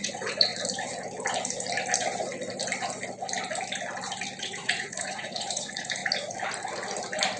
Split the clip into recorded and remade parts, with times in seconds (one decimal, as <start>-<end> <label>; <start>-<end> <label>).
0.0-0.5 remade; 0.5-4.4 recorded; 4.4-6.0 remade; 6.0-7.4 recorded